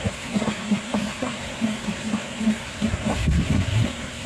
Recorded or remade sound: remade